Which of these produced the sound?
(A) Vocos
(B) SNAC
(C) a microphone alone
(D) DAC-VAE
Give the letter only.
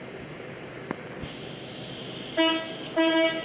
C